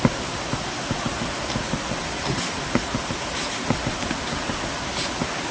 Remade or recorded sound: recorded